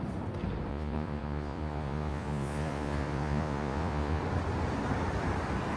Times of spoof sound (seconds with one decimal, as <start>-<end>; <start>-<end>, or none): 0.7-4.2